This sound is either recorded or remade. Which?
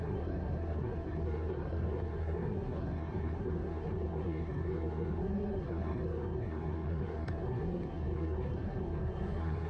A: remade